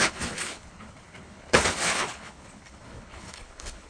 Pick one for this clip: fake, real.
fake